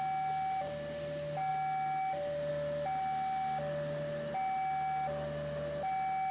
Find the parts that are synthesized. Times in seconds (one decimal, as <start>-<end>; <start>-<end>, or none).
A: none